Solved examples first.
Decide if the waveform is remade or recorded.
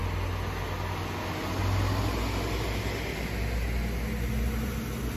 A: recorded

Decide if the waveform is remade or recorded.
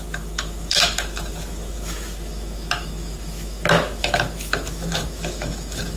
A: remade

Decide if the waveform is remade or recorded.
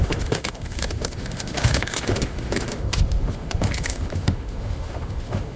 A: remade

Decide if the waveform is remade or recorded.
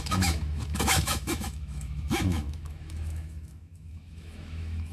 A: remade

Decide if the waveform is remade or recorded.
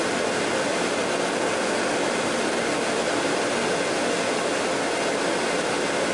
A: recorded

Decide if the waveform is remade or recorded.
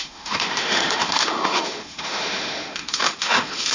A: remade